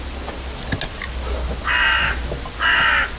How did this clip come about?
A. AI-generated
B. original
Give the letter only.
B